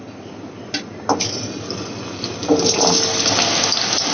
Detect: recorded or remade recorded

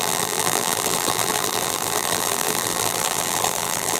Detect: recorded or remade remade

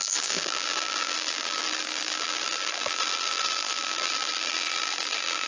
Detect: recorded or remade remade